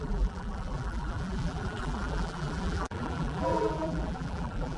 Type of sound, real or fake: fake